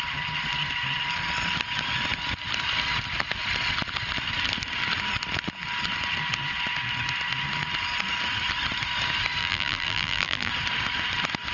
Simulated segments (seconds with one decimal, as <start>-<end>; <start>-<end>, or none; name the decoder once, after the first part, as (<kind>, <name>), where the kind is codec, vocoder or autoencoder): 9.4-10.5 (vocoder, BigVGAN v2)